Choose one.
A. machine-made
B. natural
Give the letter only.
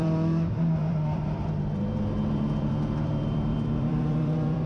A